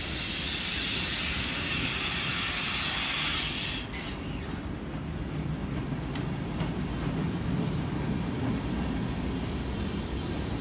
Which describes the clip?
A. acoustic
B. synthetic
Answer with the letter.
A